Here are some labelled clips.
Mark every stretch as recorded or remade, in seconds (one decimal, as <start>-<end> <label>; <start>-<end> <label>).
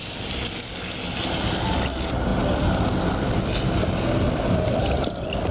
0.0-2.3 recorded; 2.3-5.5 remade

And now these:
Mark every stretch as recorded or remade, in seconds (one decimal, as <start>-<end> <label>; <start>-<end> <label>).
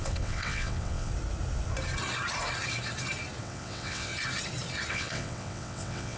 0.0-1.1 remade; 1.1-3.4 recorded; 3.4-4.1 remade; 4.1-4.9 recorded; 4.9-6.2 remade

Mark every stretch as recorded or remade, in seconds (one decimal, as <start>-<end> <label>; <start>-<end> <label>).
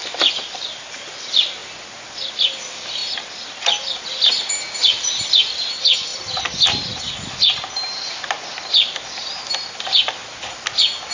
0.0-11.1 recorded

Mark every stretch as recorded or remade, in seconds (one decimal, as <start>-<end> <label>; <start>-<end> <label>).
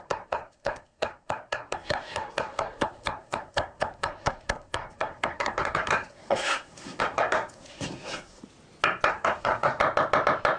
0.0-8.4 remade; 8.4-9.1 recorded; 9.1-9.8 remade; 9.8-10.6 recorded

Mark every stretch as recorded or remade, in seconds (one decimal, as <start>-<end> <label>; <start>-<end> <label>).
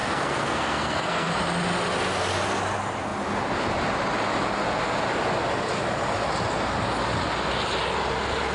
0.0-1.3 remade; 1.3-8.5 recorded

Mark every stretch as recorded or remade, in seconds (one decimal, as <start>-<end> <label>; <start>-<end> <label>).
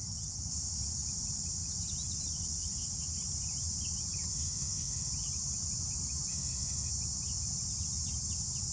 0.0-4.3 recorded; 4.3-5.1 remade; 5.1-6.3 recorded; 6.3-6.9 remade; 6.9-8.7 recorded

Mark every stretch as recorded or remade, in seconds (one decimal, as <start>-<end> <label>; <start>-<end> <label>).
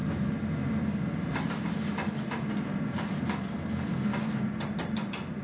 0.0-5.4 recorded